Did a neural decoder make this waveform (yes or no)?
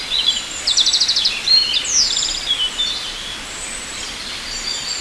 no